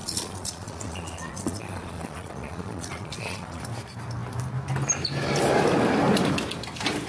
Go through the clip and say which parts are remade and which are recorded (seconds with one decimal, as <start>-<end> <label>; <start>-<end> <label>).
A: 0.0-3.6 remade; 3.6-7.1 recorded